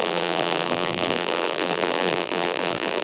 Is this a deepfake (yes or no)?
yes